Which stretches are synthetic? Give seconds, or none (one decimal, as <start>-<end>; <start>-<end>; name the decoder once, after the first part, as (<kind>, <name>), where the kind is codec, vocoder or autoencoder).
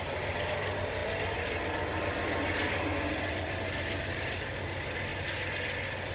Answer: none